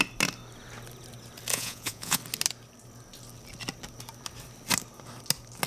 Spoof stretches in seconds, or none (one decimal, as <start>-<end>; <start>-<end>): 1.5-2.2